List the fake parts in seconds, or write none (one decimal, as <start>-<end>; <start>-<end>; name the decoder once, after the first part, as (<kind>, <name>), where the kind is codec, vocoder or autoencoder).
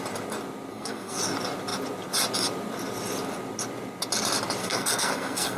0.7-1.2 (codec, SNAC); 4.6-5.6